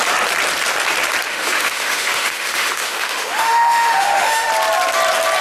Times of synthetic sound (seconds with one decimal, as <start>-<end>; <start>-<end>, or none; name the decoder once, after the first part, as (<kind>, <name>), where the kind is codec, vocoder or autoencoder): 1.3-4.5 (autoencoder, DAC-VAE)

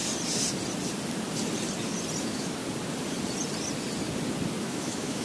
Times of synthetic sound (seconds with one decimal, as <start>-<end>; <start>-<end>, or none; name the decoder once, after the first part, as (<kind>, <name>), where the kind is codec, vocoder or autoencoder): 2.2-2.6 (autoencoder, DAC-VAE); 4.6-5.2